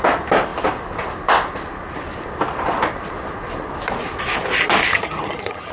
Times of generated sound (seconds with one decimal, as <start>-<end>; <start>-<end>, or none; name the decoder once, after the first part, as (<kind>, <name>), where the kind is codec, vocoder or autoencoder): 4.9-5.7 (vocoder, HiFi-GAN)